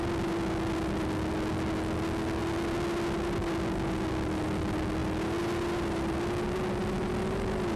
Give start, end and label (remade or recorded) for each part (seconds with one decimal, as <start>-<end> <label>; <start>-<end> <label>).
0.0-5.0 recorded; 5.0-6.1 remade; 6.1-7.8 recorded